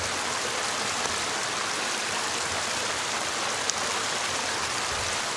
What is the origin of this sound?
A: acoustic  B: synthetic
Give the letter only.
A